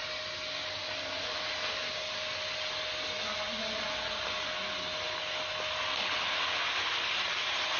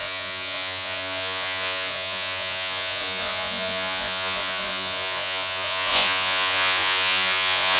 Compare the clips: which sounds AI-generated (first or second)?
second